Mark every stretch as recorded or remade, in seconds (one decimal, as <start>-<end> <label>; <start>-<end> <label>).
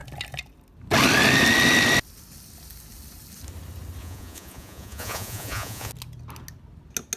0.0-4.0 recorded; 4.0-5.9 remade; 5.9-7.2 recorded